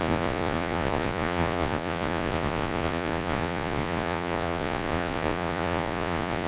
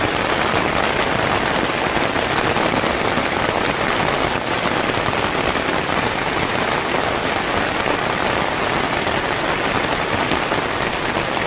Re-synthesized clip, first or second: first